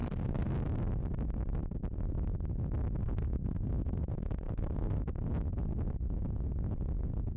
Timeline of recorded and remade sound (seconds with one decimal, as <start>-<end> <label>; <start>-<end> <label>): 0.0-0.5 remade; 0.5-3.0 recorded; 3.0-5.0 remade; 5.0-7.4 recorded